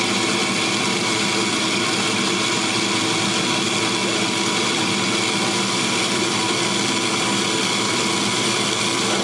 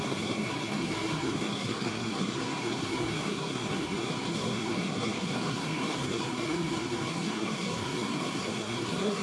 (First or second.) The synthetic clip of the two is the second